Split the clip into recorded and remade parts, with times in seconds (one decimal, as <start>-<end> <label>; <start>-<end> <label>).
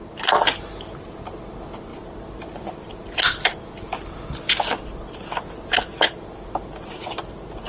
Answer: 0.0-7.7 recorded